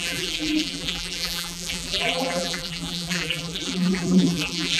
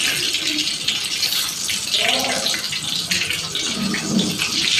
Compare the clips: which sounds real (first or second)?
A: second